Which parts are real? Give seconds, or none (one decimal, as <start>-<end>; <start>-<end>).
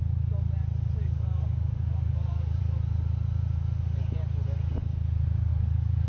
0.0-1.0; 2.6-5.5